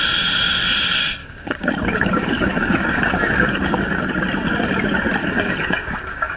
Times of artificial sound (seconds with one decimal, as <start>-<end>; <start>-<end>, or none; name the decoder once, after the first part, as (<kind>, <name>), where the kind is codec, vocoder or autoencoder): 1.2-4.0 (codec, DAC); 5.2-6.4